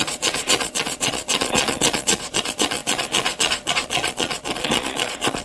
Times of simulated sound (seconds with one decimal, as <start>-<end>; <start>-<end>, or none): 0.0-5.4